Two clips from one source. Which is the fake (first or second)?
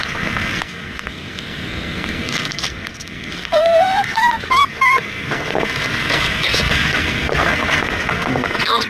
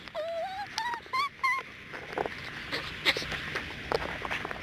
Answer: first